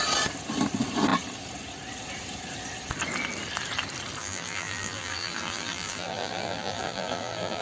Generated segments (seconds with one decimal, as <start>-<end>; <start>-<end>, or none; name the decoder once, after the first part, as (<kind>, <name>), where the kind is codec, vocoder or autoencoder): 4.2-7.6 (vocoder, BigVGAN v2)